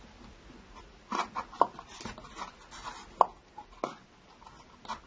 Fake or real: real